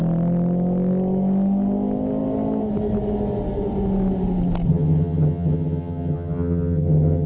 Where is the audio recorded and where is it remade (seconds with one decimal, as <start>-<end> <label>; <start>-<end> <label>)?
0.0-4.7 recorded; 4.7-7.3 remade

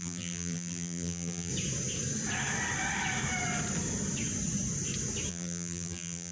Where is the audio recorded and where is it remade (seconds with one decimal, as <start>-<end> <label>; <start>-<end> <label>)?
0.0-1.5 remade; 1.5-5.3 recorded; 5.3-6.3 remade

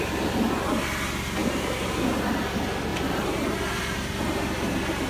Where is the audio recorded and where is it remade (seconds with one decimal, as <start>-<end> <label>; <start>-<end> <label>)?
0.0-2.9 recorded; 2.9-5.1 remade

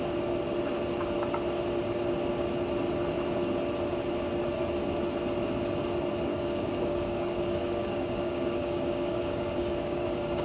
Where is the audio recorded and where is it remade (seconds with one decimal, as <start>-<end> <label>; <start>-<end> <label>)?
0.0-6.3 recorded; 6.3-10.4 remade

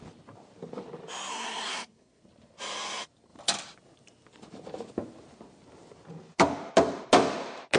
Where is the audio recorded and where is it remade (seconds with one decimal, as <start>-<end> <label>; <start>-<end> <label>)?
0.0-1.3 recorded; 1.3-2.2 remade; 2.2-7.8 recorded

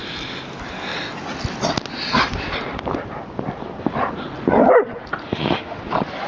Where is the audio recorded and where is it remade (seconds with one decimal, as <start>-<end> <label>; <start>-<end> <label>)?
0.0-5.2 recorded; 5.2-5.8 remade; 5.8-6.3 recorded